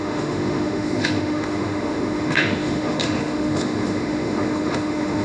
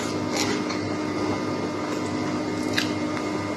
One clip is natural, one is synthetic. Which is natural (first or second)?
second